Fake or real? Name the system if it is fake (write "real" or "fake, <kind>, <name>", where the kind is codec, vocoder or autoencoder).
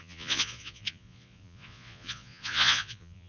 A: fake, vocoder, Vocos